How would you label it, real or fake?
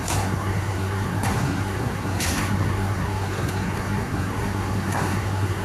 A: fake